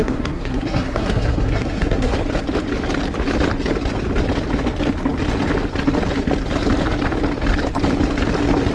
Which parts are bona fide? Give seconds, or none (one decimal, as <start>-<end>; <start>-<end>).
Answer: 2.1-8.7